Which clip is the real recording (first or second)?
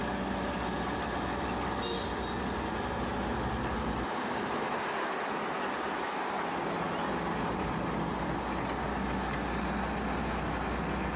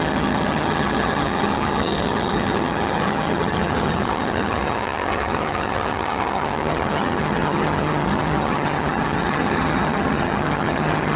first